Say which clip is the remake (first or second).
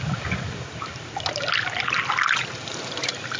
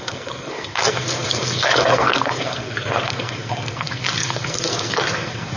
second